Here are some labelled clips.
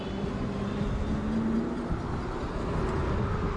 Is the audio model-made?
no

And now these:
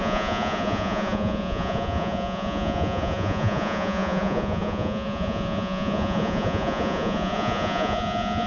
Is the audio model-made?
yes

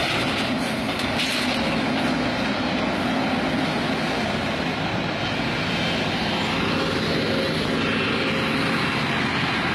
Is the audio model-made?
no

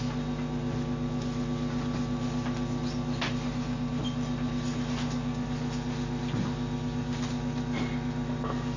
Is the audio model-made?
no